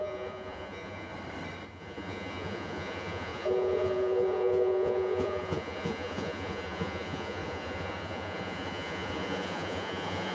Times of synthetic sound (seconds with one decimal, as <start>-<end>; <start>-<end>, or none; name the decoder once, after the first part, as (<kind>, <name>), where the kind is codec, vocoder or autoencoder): 0.0-1.1 (vocoder, Vocos); 1.7-10.3